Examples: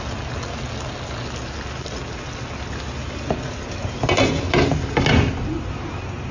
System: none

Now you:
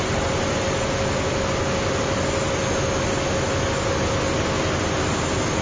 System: none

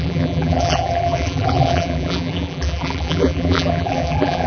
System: vocoder, BigVGAN v2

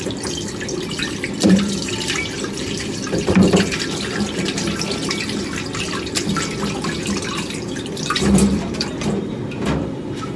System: vocoder, BigVGAN v2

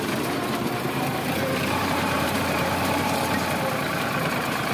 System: vocoder, BigVGAN v2